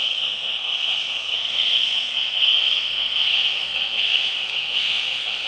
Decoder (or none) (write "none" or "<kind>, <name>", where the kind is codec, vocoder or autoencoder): codec, SNAC